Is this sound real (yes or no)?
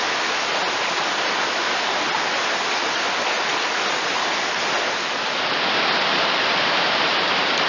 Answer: yes